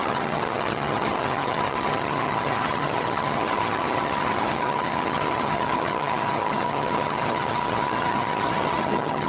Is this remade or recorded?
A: remade